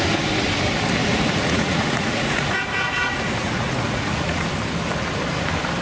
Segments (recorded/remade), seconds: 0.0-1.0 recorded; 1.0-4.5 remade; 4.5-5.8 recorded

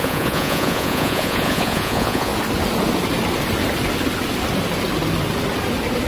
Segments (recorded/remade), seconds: 0.0-2.3 remade; 2.3-6.1 recorded